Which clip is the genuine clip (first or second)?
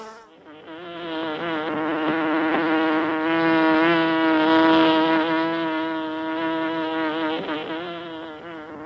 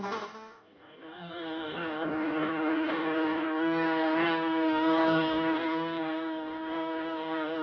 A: first